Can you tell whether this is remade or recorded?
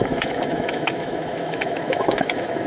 remade